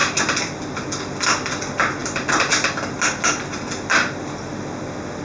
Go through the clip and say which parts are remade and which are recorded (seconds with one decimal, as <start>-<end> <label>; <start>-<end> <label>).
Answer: 0.0-5.2 recorded